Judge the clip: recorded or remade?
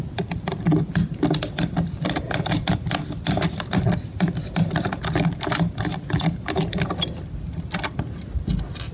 recorded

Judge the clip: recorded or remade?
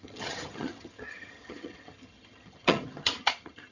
remade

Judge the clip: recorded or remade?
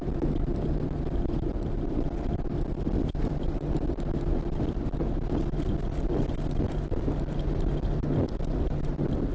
recorded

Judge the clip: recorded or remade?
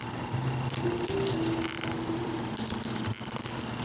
recorded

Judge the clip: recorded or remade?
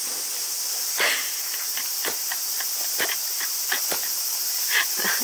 remade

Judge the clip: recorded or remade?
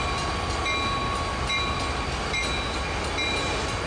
recorded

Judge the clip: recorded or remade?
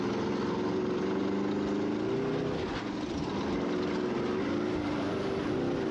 recorded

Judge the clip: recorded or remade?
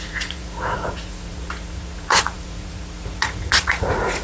remade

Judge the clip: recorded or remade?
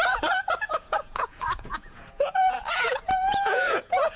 remade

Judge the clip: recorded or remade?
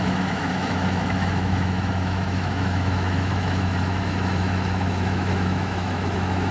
remade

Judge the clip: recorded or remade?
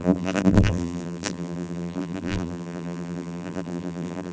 remade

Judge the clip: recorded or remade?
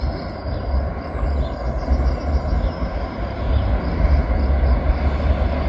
recorded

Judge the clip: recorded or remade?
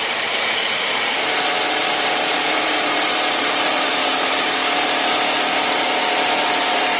remade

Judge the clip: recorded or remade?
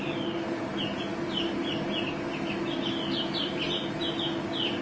recorded